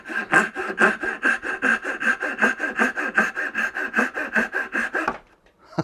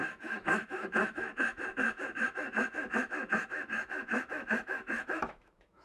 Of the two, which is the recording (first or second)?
first